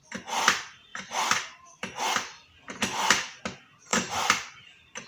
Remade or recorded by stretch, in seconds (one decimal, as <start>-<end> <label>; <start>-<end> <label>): 0.0-0.9 recorded; 0.9-3.4 remade; 3.4-3.9 recorded; 3.9-5.1 remade